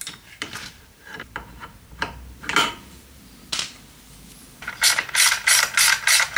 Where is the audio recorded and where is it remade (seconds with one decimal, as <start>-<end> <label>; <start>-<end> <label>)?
0.0-6.4 remade